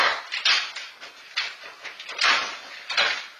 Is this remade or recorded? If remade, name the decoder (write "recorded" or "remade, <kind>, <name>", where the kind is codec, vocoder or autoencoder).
recorded